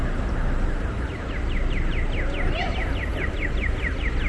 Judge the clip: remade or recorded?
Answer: recorded